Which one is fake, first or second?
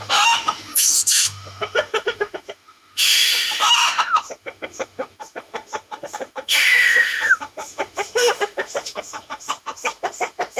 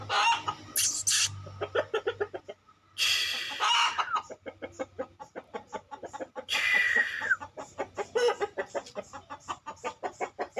first